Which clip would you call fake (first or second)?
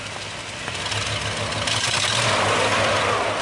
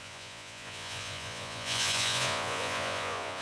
second